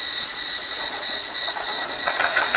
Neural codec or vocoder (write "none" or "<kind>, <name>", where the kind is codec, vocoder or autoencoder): vocoder, Vocos